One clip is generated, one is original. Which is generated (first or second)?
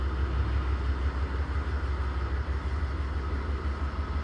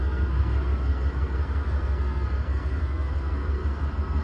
second